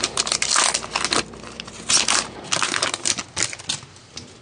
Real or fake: real